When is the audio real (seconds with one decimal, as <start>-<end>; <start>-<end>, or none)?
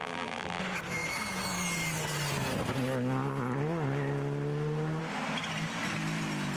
0.6-6.6